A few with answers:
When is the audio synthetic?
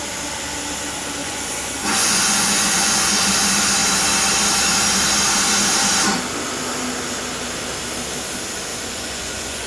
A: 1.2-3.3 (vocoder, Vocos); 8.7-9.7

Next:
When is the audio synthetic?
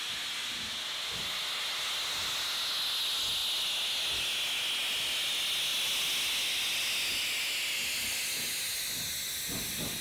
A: none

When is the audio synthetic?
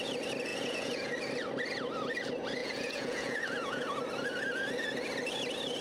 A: 0.5-1.1 (vocoder, Vocos); 2.6-4.0